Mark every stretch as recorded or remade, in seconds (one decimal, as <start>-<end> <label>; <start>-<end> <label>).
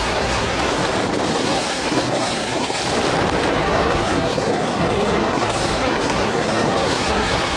0.0-0.8 remade; 0.8-1.3 recorded; 1.3-2.8 remade; 2.8-3.5 recorded; 3.5-7.6 remade